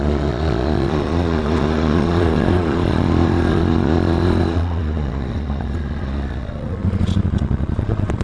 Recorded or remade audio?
remade